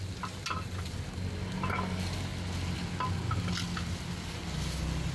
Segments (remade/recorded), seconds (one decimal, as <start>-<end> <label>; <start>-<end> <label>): 0.0-5.1 recorded